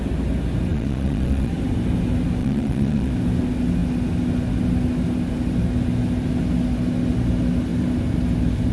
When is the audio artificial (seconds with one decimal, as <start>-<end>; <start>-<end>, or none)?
0.7-1.5; 2.4-3.1